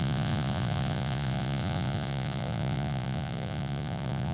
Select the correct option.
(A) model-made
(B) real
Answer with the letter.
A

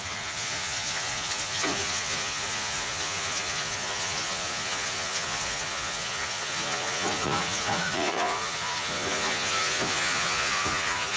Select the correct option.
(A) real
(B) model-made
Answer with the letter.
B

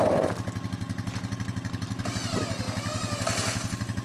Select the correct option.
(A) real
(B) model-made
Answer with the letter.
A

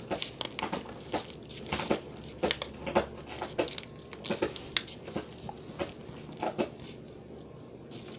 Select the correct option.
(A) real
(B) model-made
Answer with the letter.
A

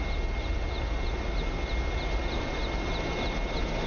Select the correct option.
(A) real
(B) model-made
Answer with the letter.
A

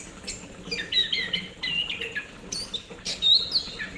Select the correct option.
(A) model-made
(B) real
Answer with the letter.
B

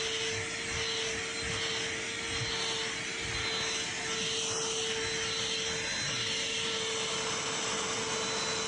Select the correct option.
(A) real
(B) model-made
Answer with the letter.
A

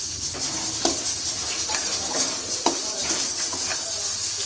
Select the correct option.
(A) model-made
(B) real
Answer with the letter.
B